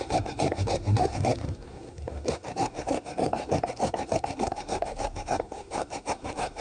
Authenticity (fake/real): fake